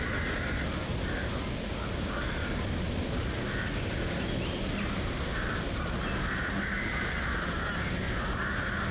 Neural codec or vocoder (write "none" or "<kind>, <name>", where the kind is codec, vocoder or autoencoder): none